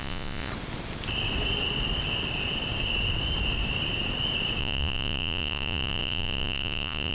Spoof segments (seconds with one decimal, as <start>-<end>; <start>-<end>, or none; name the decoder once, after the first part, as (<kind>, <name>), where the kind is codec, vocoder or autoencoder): 0.0-0.5 (vocoder, Vocos); 4.6-7.1

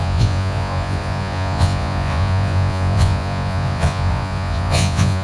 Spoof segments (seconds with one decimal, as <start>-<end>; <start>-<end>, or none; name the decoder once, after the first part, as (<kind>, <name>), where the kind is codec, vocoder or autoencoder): 0.0-5.2 (vocoder, Vocos)

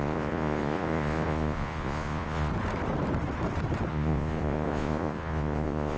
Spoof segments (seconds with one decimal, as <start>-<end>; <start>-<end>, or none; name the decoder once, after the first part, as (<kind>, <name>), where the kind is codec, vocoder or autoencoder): 0.0-2.5 (vocoder, Vocos); 3.9-6.0

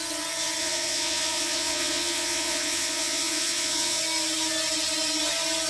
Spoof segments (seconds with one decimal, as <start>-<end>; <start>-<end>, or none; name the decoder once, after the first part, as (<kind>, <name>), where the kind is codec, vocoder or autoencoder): 0.6-4.0 (vocoder, Vocos)